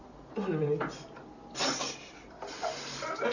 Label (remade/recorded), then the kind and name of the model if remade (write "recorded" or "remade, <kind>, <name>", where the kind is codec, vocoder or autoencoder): recorded